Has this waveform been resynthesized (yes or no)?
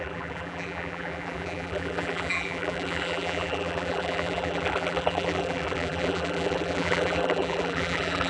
yes